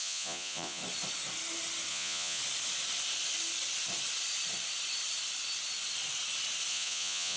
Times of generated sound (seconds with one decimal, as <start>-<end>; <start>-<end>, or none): 0.0-0.8; 1.9-2.4; 6.7-7.4